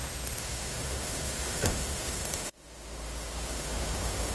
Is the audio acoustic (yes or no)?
no